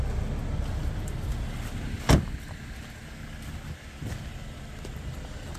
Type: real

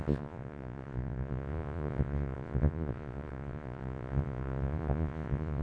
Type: fake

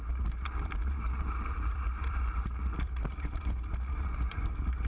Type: fake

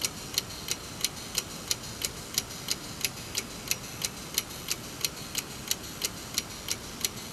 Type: real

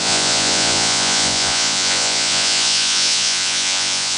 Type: fake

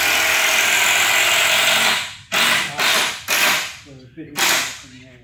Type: real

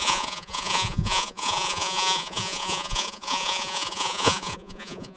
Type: fake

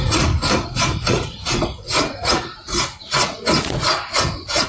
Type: fake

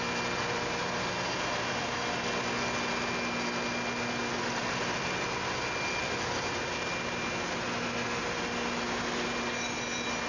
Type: real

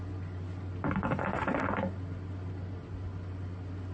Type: real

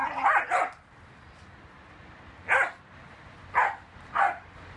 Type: real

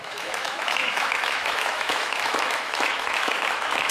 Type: fake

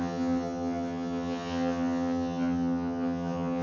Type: fake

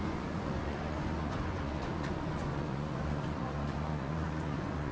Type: fake